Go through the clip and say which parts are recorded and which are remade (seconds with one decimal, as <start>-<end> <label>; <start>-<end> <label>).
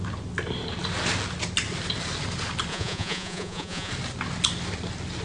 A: 0.0-2.7 recorded; 2.7-3.9 remade; 3.9-5.2 recorded